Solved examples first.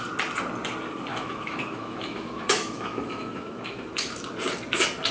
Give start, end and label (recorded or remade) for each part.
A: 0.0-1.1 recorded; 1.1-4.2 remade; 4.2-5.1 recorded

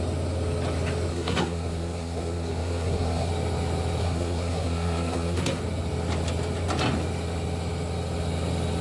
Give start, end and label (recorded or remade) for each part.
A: 0.0-1.1 recorded; 1.1-3.3 remade; 3.3-4.0 recorded; 4.0-5.6 remade; 5.6-8.8 recorded

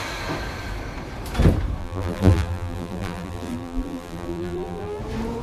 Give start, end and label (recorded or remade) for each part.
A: 0.0-1.8 recorded; 1.8-5.0 remade; 5.0-5.4 recorded

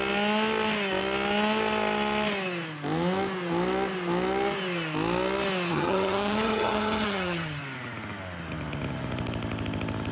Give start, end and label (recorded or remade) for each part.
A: 0.0-5.7 recorded; 5.7-7.6 remade; 7.6-10.1 recorded

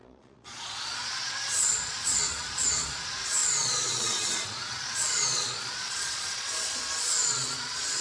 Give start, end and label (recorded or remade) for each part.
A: 0.0-8.0 remade